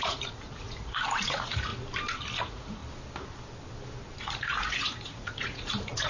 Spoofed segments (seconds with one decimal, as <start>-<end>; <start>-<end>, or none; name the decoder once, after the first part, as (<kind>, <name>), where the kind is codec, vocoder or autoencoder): 0.0-1.7 (vocoder, Vocos); 2.4-2.8; 4.2-6.1